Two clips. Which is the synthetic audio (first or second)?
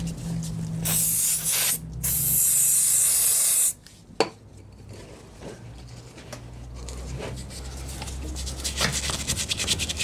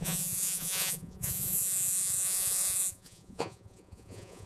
second